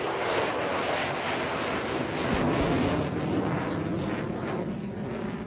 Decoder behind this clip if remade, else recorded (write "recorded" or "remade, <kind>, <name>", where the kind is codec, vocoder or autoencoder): recorded